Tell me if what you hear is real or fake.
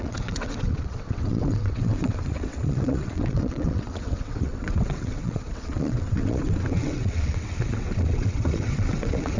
fake